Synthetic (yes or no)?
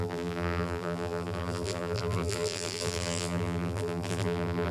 yes